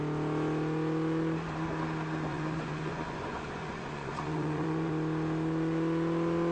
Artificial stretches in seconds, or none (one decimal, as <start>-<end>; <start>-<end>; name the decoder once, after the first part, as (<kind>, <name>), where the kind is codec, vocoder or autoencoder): 2.3-4.9 (vocoder, Vocos)